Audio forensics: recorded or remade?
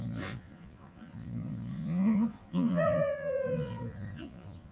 remade